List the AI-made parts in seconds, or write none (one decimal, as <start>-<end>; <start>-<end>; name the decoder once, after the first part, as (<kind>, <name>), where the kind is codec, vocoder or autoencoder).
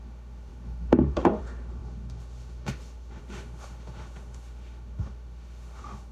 0.0-6.1 (autoencoder, DAC-VAE)